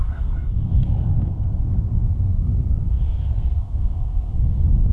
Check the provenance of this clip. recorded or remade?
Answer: remade